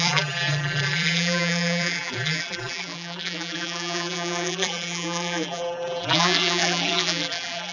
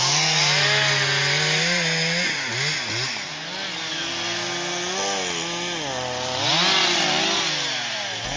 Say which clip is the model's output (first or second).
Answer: first